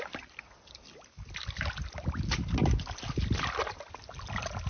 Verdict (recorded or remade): recorded